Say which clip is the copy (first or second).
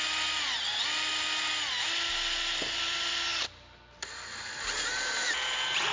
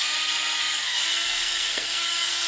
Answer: second